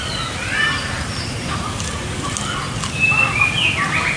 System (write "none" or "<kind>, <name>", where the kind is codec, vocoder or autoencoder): none